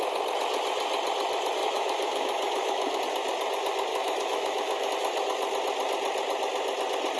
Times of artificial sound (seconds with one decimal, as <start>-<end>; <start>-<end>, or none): 1.6-3.0; 3.9-4.9